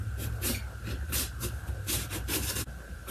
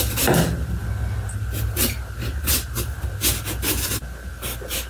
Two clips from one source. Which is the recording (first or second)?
second